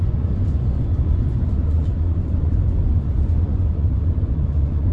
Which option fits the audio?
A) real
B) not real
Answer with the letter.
B